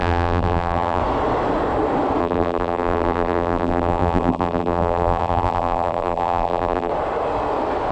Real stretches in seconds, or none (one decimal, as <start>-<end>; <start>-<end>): 1.0-2.2; 6.9-7.9